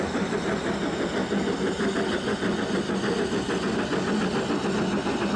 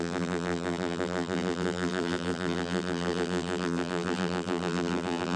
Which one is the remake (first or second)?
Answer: second